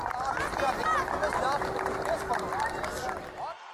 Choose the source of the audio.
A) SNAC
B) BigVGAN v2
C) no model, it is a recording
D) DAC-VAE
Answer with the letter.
B